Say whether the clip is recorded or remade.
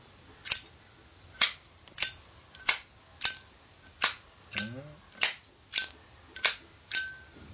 recorded